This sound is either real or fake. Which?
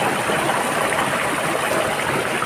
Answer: real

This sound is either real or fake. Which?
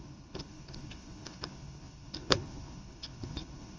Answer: fake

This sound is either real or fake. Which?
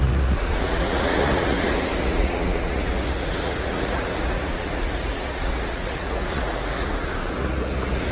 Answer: fake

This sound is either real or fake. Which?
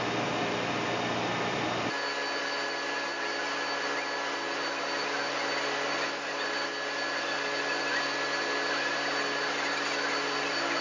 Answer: real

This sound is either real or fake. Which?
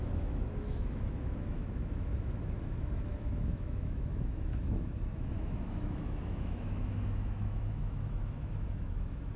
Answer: fake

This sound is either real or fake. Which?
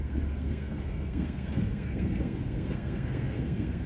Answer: fake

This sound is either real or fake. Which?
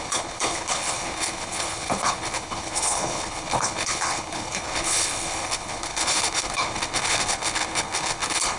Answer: fake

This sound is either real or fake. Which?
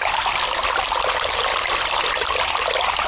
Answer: real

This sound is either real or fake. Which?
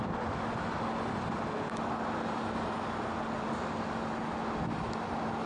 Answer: real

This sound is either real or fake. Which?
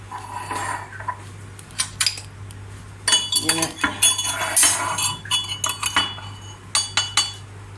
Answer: real